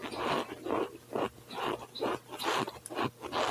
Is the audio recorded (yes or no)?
yes